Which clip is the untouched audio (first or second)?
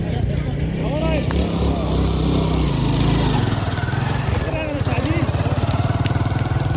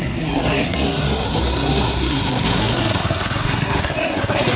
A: first